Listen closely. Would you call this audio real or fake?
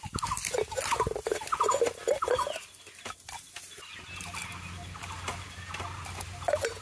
real